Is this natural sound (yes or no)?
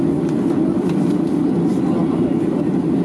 yes